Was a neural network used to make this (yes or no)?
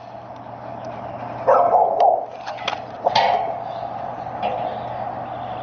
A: no